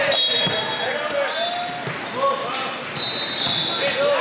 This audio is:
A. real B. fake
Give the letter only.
A